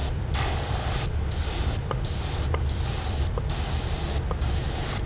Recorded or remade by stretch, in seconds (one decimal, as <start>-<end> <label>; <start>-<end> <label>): 0.0-5.1 recorded